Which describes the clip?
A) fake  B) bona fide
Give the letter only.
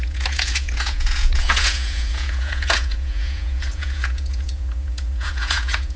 A